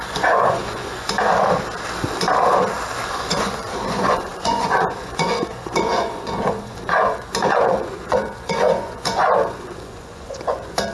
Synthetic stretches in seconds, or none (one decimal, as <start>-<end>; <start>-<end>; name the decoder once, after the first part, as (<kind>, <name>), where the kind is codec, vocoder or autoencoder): 0.0-1.2 (vocoder, Vocos); 3.1-10.9